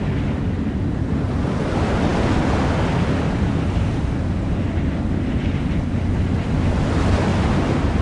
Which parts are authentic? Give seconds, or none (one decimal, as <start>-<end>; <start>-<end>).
0.0-8.0